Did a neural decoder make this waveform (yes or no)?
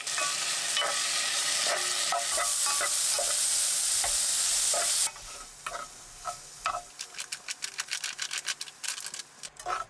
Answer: no